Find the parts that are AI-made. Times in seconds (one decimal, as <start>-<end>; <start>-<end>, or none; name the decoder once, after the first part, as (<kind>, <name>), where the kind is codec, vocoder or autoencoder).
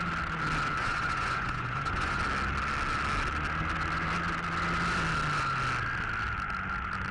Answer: 0.8-2.2 (vocoder, Vocos)